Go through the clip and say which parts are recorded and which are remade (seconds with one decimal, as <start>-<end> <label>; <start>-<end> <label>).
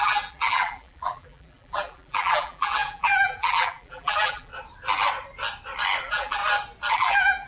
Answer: 0.0-4.5 remade; 4.5-6.0 recorded; 6.0-6.4 remade; 6.4-6.9 recorded; 6.9-7.5 remade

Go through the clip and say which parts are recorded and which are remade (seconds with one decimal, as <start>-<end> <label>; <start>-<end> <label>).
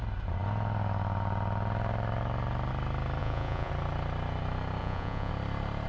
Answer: 0.0-3.2 recorded; 3.2-3.7 remade; 3.7-4.8 recorded; 4.8-5.3 remade; 5.3-5.9 recorded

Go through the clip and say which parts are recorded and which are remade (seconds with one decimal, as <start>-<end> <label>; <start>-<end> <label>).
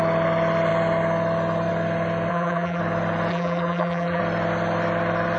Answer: 0.0-2.3 recorded; 2.3-2.8 remade; 2.8-3.3 recorded; 3.3-4.2 remade; 4.2-5.4 recorded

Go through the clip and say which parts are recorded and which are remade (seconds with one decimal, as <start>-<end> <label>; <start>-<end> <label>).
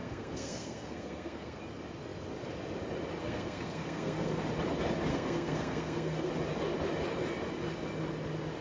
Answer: 0.0-1.6 remade; 1.6-3.2 recorded; 3.2-4.4 remade; 4.4-5.1 recorded; 5.1-6.3 remade; 6.3-8.6 recorded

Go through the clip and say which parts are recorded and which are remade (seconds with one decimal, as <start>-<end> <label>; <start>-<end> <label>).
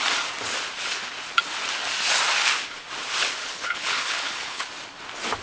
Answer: 0.0-3.4 recorded; 3.4-4.7 remade; 4.7-5.4 recorded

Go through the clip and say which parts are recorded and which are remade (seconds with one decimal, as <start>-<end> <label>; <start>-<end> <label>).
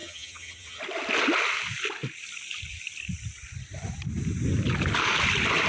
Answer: 0.0-0.8 remade; 0.8-5.7 recorded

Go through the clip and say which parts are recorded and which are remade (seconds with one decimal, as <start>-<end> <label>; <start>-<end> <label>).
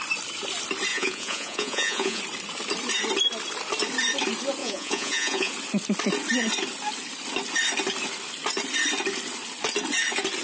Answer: 0.0-0.9 recorded; 0.9-2.2 remade; 2.2-4.6 recorded; 4.6-5.5 remade; 5.5-10.4 recorded